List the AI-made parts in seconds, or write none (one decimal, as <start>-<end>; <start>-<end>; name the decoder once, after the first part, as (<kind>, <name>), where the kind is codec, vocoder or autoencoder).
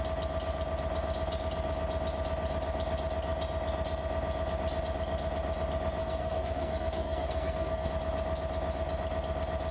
6.0-7.9 (codec, SNAC)